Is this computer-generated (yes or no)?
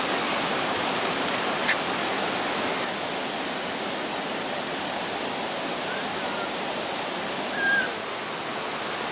no